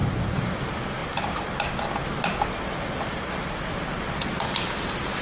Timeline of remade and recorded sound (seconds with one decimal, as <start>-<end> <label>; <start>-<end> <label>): 0.0-5.2 recorded